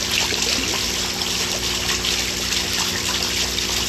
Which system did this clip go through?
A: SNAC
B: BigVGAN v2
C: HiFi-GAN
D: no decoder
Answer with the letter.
D